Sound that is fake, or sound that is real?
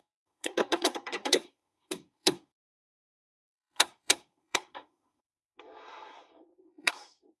fake